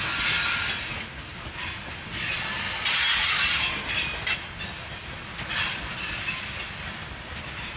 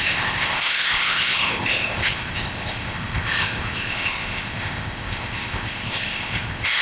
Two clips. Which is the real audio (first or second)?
first